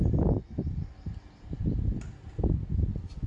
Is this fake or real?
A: real